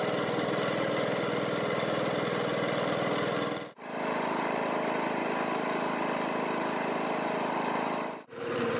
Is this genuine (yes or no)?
yes